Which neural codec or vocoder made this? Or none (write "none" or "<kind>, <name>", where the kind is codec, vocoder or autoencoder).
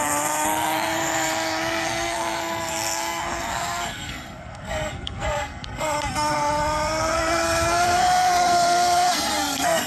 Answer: codec, SNAC